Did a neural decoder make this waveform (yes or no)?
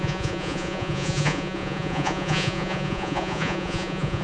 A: yes